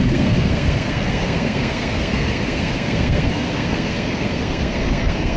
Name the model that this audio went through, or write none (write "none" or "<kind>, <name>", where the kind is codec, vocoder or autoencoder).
codec, SNAC